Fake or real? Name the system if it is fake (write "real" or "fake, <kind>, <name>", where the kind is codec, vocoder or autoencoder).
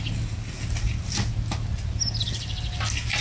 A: real